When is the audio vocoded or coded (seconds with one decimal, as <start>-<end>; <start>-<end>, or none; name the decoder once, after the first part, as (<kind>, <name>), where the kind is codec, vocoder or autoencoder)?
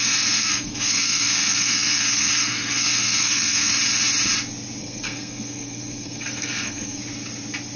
0.0-3.7 (codec, SNAC); 4.8-7.0